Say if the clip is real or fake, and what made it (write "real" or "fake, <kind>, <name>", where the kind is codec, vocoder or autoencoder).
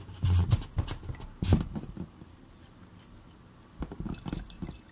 real